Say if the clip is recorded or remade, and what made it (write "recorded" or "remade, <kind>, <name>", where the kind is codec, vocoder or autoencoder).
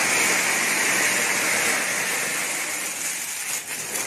recorded